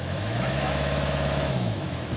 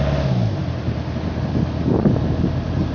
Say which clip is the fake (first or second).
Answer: first